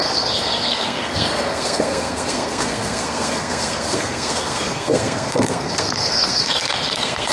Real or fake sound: fake